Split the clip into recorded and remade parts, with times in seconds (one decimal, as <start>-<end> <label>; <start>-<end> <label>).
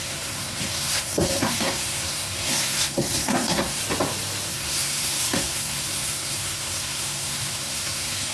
0.0-3.8 remade; 3.8-4.5 recorded; 4.5-8.3 remade